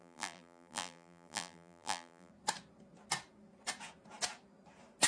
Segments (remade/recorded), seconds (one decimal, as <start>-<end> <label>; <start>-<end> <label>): 0.0-2.3 remade; 2.3-5.1 recorded